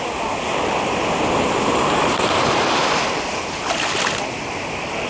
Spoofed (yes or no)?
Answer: no